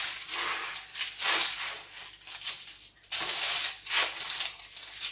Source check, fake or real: real